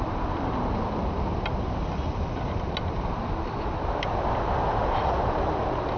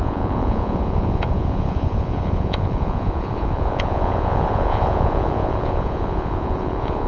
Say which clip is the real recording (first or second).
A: first